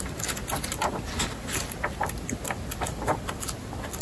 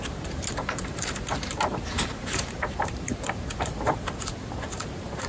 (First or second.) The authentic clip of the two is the first